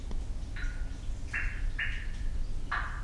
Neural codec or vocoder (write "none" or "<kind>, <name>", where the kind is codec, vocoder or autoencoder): none